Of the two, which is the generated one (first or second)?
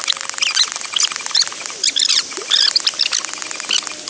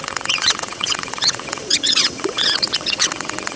second